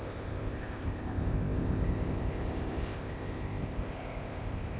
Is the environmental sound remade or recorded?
remade